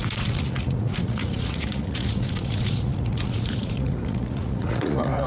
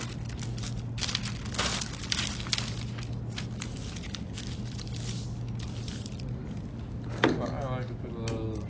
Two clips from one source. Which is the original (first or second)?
second